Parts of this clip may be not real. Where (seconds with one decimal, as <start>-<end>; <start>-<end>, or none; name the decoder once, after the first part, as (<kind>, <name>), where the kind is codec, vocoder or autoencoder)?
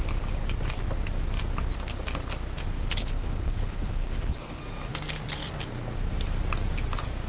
3.0-4.6 (codec, HILCodec)